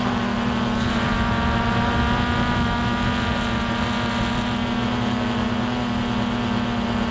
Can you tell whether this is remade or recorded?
recorded